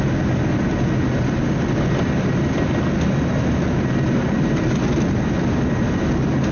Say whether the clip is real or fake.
real